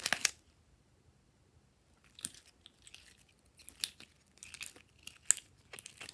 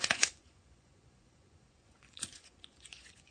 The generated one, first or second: second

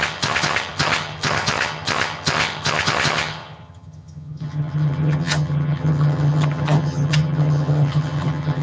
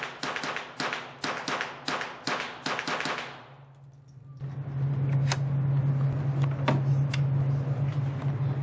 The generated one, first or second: first